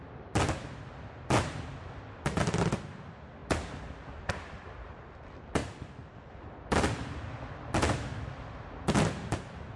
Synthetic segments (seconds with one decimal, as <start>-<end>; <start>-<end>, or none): none